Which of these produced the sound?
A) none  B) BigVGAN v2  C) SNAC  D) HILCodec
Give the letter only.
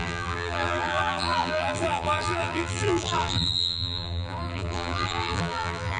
B